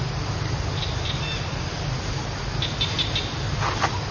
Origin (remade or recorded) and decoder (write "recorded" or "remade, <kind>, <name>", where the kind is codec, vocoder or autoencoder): recorded